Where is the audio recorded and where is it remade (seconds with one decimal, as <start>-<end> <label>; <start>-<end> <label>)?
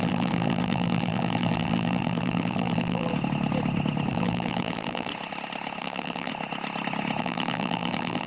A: 0.0-3.1 remade; 3.1-4.1 recorded; 4.1-5.1 remade; 5.1-5.8 recorded; 5.8-6.3 remade; 6.3-7.2 recorded; 7.2-8.3 remade